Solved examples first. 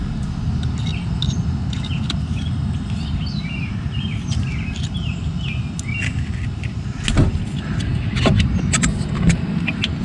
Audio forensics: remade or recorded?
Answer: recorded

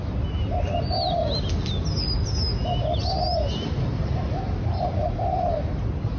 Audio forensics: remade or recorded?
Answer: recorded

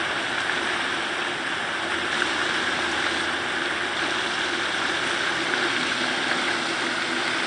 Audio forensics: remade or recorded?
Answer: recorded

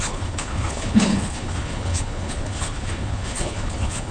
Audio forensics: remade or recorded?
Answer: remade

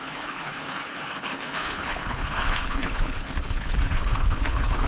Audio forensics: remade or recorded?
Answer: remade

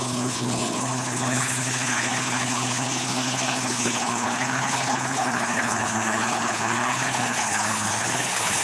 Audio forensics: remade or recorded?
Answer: remade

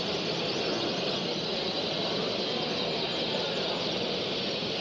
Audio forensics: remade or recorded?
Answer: recorded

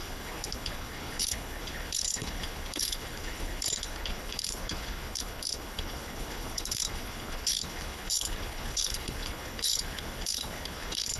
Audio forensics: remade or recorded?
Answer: remade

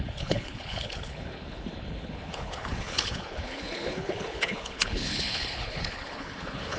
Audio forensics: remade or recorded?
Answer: remade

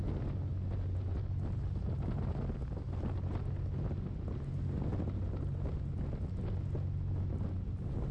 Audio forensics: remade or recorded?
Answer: recorded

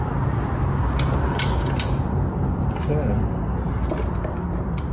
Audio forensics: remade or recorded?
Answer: recorded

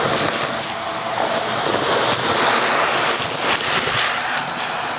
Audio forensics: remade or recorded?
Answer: recorded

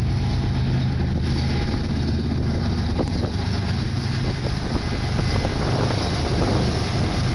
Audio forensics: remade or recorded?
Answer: recorded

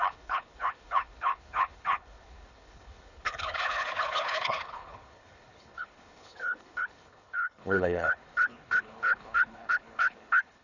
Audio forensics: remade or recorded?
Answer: remade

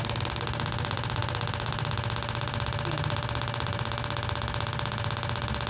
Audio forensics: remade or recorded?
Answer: recorded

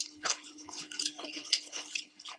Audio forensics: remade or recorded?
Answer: remade